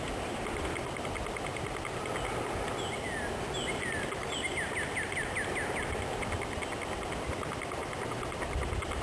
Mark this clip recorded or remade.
recorded